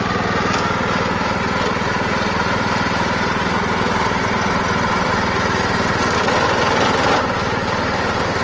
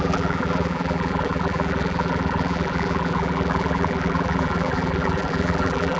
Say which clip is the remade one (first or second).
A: second